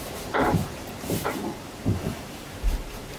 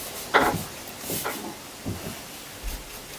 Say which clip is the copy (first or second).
first